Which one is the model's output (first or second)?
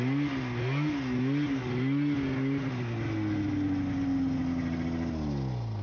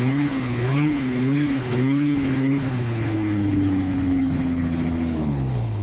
second